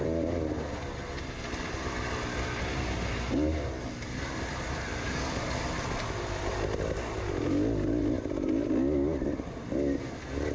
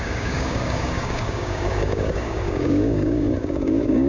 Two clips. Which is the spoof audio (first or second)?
second